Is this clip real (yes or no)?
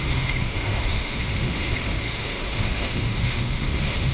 no